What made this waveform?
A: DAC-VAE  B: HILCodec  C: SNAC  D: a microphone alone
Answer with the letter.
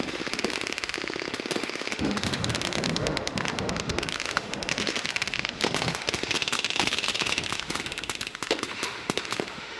A